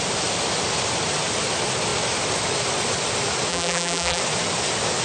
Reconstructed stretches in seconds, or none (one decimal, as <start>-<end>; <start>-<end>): 3.5-4.2